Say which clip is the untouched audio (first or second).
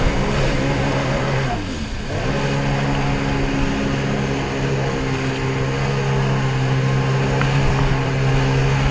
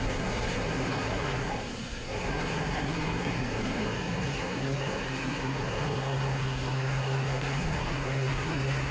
first